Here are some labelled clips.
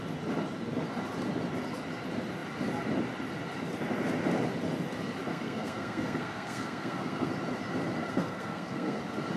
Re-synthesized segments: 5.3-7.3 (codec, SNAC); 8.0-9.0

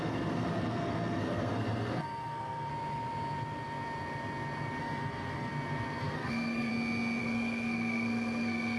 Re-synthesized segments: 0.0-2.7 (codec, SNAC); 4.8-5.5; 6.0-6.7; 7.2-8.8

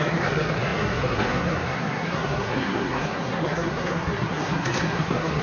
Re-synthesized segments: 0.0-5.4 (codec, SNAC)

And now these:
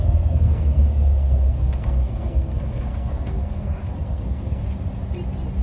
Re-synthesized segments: 0.0-4.6 (codec, SNAC)

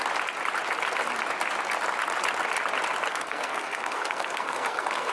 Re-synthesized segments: 3.1-5.1 (codec, SNAC)

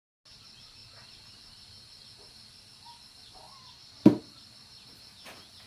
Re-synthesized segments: none

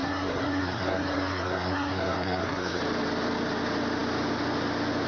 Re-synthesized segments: 0.0-2.8 (codec, SNAC)